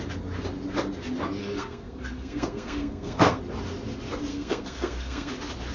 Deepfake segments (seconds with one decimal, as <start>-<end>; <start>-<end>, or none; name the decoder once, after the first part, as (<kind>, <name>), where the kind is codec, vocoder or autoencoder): 1.4-3.4 (codec, SNAC); 4.3-5.3